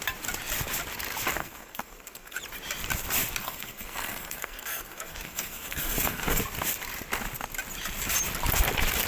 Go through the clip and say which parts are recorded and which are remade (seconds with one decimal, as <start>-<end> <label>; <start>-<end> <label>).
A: 0.0-1.4 recorded; 1.4-2.4 remade; 2.4-3.4 recorded; 3.4-6.4 remade; 6.4-9.1 recorded